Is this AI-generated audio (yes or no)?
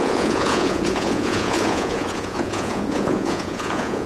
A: yes